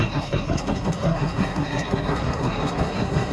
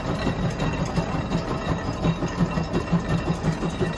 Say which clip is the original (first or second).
second